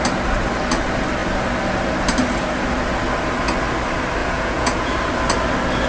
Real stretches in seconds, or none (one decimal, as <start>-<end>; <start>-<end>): 0.0-4.2; 4.9-5.9